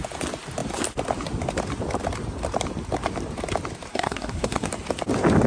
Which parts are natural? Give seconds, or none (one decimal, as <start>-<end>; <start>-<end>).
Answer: 0.0-3.9; 4.7-5.5